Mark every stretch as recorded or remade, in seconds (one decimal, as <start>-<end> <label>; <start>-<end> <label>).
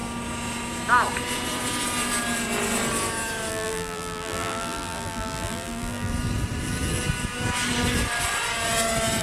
0.0-3.5 recorded; 3.5-6.1 remade; 6.1-9.2 recorded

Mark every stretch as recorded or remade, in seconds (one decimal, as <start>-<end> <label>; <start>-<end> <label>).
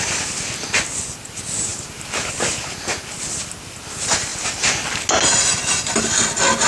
0.0-6.7 recorded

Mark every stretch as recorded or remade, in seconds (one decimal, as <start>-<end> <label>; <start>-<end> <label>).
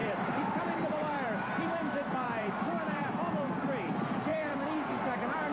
0.0-3.3 remade; 3.3-4.3 recorded; 4.3-4.9 remade; 4.9-5.5 recorded